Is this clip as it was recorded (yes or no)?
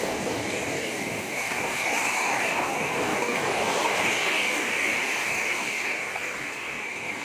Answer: no